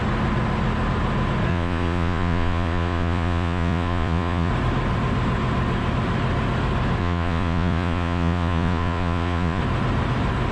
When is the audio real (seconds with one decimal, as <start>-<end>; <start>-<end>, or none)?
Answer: 0.0-1.5; 4.5-7.0; 9.6-10.5